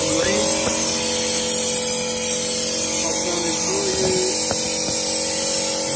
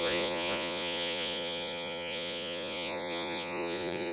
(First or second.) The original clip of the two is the first